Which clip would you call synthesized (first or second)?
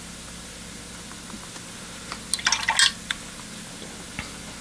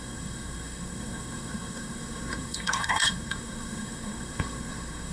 second